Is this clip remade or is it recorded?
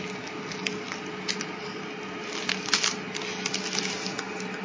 recorded